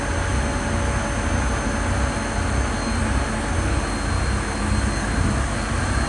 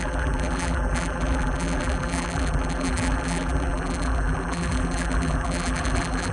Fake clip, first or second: second